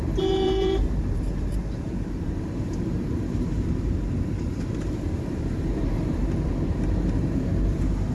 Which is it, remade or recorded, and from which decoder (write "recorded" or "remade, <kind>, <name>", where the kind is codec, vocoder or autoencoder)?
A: remade, vocoder, BigVGAN v2